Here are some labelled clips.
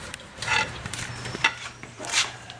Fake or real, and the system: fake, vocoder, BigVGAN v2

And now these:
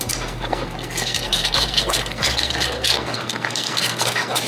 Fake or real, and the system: fake, codec, SNAC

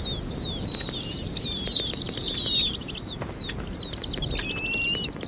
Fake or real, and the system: real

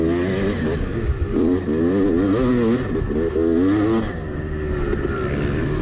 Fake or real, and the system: real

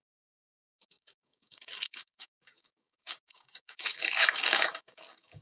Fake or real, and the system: fake, codec, DAC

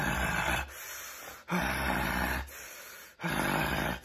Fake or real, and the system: real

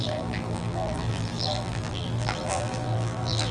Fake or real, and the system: fake, vocoder, BigVGAN v2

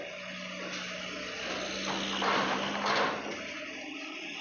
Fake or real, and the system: real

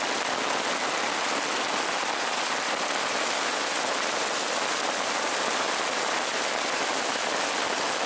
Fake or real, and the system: real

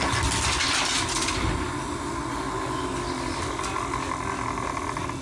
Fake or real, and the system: real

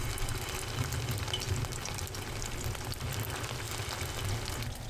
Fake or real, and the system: real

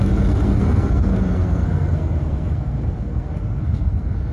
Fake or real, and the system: fake, codec, SNAC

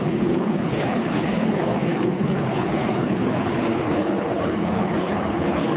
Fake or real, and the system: fake, codec, HILCodec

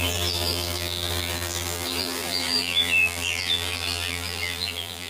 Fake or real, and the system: fake, vocoder, BigVGAN v2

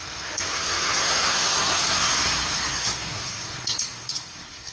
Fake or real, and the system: fake, codec, SNAC